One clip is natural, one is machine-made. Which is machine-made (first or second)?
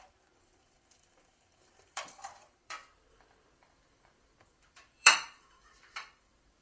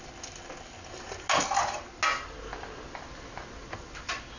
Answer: first